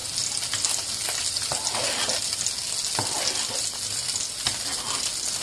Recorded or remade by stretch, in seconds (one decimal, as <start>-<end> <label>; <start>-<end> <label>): 0.0-5.4 recorded